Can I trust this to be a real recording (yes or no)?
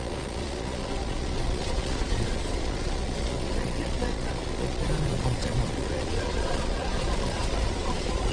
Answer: no